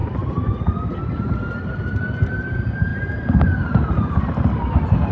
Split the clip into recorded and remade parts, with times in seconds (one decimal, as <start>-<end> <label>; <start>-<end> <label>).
0.0-2.9 recorded; 2.9-4.6 remade; 4.6-5.1 recorded